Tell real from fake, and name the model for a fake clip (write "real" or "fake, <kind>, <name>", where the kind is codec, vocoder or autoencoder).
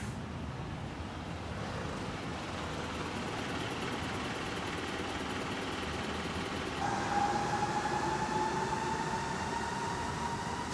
real